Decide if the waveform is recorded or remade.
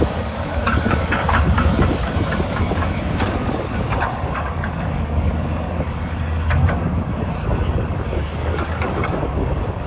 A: remade